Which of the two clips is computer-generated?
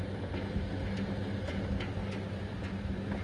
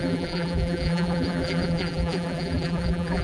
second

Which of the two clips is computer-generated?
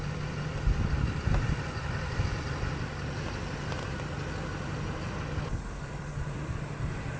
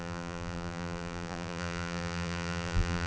second